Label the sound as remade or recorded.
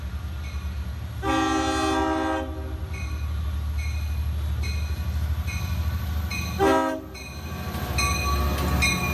recorded